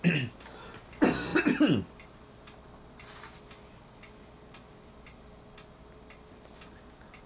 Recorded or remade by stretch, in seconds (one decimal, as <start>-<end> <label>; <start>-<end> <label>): 0.0-7.3 recorded